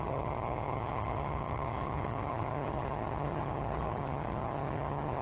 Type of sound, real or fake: fake